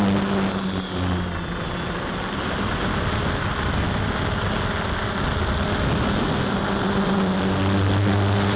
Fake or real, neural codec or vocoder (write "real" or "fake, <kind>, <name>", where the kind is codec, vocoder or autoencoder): real